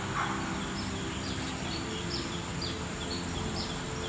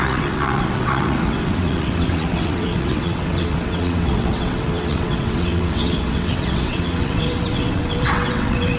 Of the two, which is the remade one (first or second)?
second